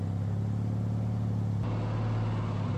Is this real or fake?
real